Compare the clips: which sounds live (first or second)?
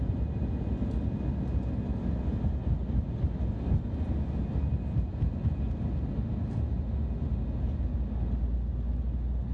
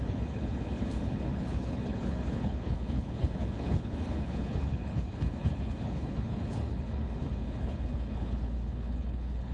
first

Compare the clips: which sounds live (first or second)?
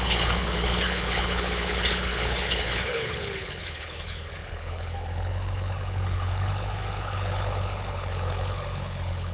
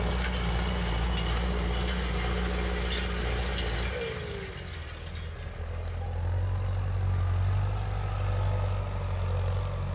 second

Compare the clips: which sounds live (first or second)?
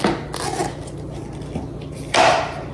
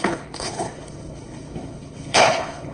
first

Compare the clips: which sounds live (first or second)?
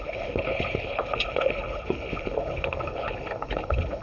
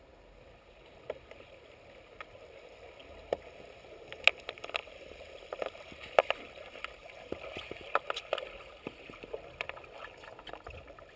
second